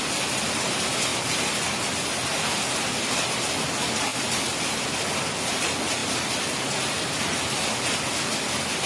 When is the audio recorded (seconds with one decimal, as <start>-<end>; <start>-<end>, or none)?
0.0-6.0; 7.5-8.9